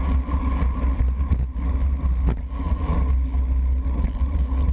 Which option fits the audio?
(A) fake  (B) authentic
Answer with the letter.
B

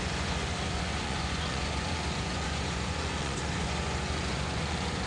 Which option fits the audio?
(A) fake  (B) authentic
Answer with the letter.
A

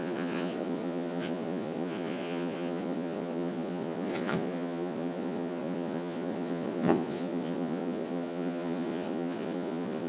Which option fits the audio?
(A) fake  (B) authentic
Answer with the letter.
A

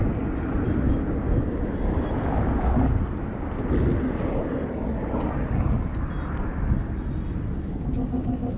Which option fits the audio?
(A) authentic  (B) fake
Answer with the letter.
A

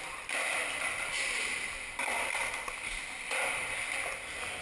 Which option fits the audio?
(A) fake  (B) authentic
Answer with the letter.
B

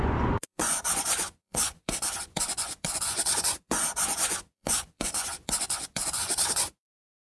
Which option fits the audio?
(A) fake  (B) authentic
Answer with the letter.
A